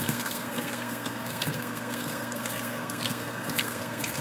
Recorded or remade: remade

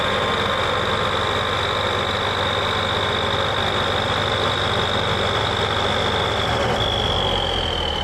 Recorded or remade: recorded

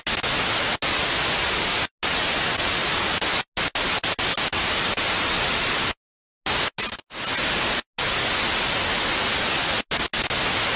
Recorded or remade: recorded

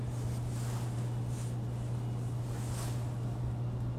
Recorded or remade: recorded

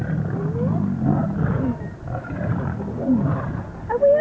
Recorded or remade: recorded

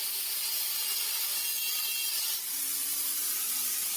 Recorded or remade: recorded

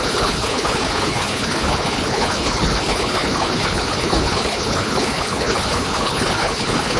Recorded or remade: remade